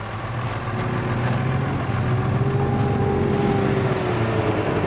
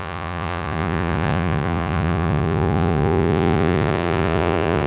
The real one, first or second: first